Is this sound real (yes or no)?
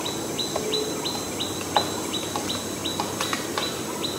yes